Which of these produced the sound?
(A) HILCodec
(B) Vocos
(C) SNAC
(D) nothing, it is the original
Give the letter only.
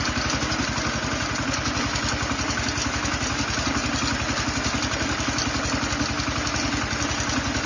D